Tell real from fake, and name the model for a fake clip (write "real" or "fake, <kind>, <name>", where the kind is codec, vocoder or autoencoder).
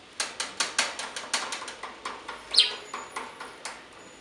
real